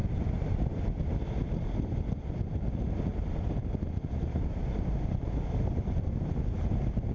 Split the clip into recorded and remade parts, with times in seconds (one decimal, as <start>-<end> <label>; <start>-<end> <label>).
0.0-1.0 remade; 1.0-3.1 recorded; 3.1-6.0 remade; 6.0-7.1 recorded